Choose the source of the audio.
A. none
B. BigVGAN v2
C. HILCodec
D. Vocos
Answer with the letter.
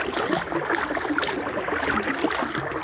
A